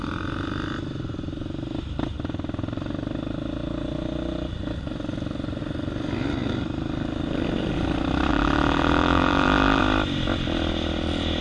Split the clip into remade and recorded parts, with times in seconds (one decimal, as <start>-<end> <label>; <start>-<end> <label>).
0.0-8.3 recorded; 8.3-9.8 remade; 9.8-11.4 recorded